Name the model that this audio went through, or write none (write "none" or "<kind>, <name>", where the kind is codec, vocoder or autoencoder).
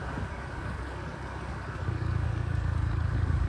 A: codec, DAC